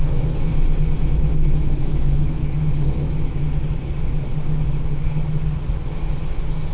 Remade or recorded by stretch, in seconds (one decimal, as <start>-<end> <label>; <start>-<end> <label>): 0.0-0.5 remade; 0.5-1.2 recorded; 1.2-2.4 remade; 2.4-6.7 recorded